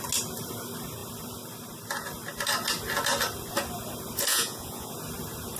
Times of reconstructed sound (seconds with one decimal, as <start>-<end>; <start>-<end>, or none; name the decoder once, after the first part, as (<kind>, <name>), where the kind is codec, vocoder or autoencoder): 4.3-4.9 (vocoder, Vocos)